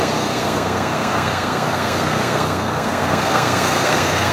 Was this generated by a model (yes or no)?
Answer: yes